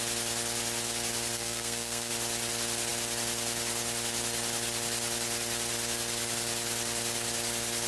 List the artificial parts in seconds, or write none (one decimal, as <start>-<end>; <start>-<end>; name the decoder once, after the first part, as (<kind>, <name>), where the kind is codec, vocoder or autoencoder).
1.3-2.1 (codec, SNAC)